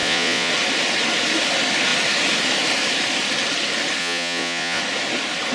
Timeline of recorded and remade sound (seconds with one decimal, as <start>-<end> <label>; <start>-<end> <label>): 0.0-0.5 remade; 0.5-4.0 recorded; 4.0-4.8 remade; 4.8-5.5 recorded